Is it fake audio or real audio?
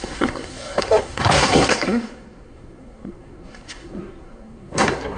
fake